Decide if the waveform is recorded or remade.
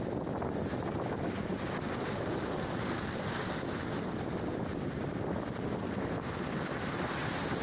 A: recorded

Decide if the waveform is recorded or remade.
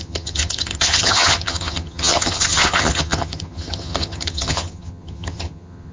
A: remade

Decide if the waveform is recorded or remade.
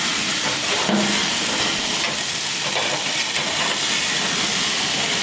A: recorded